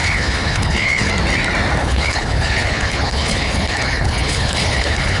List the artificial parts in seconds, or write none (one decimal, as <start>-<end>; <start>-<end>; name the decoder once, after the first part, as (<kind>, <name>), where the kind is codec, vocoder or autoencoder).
0.0-1.1 (codec, HILCodec); 1.8-5.2